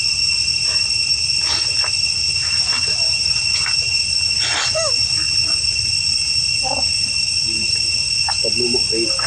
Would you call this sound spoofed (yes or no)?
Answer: no